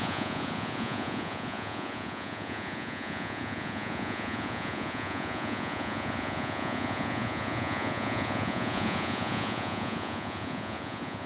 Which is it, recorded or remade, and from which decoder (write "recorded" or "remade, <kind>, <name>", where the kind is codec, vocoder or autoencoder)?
remade, vocoder, Vocos